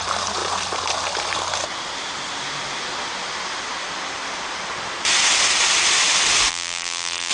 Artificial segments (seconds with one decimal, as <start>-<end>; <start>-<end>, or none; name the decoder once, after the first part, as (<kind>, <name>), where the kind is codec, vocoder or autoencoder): 6.5-7.3 (vocoder, BigVGAN v2)